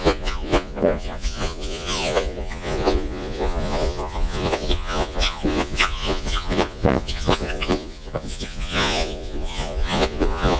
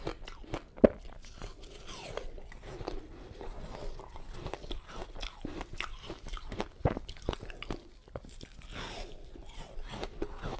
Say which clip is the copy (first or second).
first